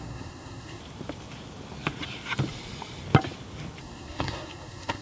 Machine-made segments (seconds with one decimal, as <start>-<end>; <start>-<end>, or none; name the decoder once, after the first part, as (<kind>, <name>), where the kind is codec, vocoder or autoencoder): 0.0-0.8 (codec, SNAC); 3.8-5.0